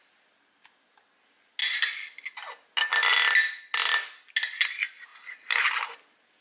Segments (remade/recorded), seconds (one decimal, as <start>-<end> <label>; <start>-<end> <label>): 0.0-6.4 recorded